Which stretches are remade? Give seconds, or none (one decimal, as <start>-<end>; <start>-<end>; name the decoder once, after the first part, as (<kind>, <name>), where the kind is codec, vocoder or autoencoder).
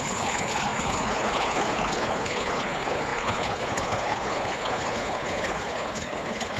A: 0.0-6.6 (codec, HILCodec)